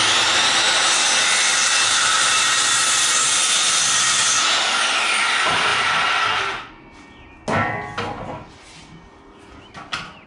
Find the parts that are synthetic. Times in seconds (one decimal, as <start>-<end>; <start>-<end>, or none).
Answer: 1.6-2.6; 5.7-6.2